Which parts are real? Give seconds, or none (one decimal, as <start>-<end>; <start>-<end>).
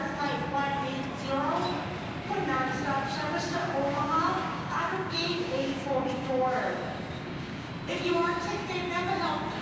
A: 0.0-3.6; 7.7-9.6